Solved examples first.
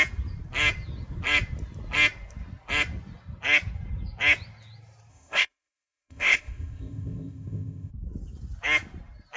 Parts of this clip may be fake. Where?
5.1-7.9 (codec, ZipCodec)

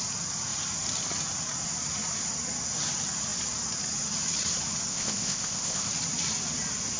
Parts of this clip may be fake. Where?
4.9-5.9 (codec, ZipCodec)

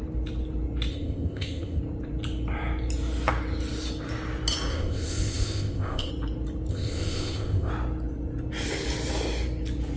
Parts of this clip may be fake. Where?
0.9-1.8 (codec, ZipCodec); 4.7-6.1; 6.7-7.7

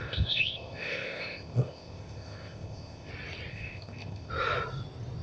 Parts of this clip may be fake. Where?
0.0-3.1 (codec, ZipCodec); 3.5-4.3

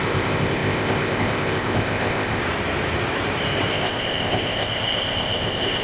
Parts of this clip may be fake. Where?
0.0-2.4 (codec, ZipCodec); 3.7-5.8

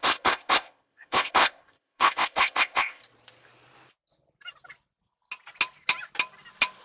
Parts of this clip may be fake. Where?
0.0-3.0 (codec, ZipCodec)

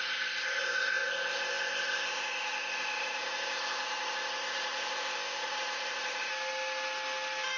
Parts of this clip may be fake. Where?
0.0-6.3 (codec, ZipCodec)

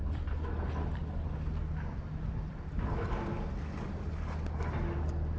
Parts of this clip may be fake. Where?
none